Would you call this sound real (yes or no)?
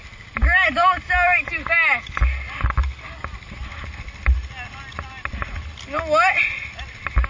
yes